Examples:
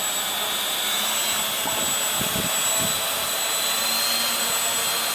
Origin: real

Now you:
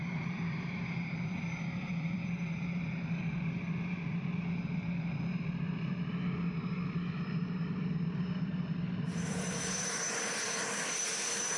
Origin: fake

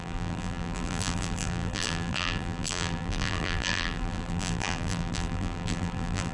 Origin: fake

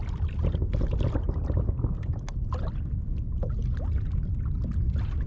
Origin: real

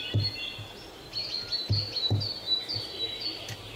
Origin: real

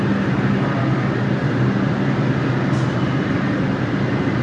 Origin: real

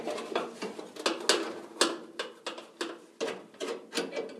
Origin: real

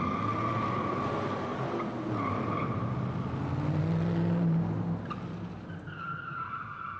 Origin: real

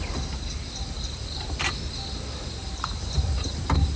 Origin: real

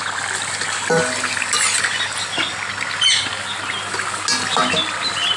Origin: real